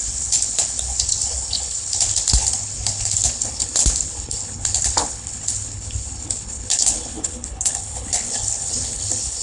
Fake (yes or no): yes